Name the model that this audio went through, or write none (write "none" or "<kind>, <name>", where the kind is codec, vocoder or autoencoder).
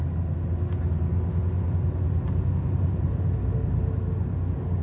none